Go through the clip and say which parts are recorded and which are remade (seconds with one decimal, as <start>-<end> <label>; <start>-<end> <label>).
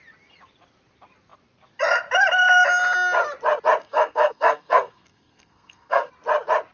0.0-3.8 recorded; 3.8-6.1 remade; 6.1-6.7 recorded